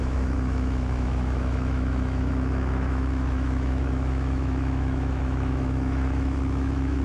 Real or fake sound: fake